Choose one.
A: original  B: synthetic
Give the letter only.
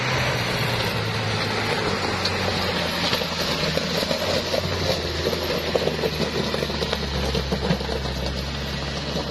A